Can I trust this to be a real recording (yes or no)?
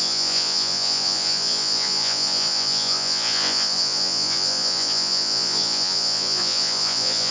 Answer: no